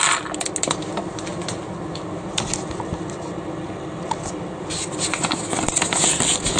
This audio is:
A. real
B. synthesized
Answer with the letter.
A